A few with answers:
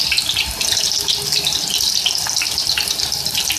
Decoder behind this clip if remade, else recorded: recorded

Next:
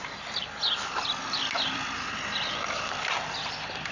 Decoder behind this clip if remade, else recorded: remade, vocoder, BigVGAN v2